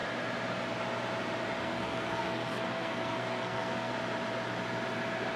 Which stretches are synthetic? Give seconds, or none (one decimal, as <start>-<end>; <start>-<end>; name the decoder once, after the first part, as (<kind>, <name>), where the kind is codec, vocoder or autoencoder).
1.6-3.9 (codec, SNAC)